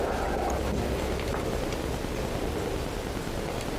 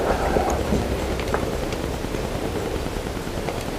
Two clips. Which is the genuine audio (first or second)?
first